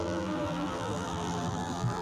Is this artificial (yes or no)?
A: yes